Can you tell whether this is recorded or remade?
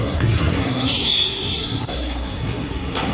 remade